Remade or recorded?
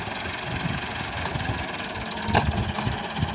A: recorded